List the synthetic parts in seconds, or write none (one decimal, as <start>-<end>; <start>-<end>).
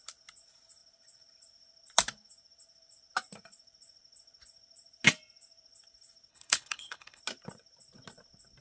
6.3-7.2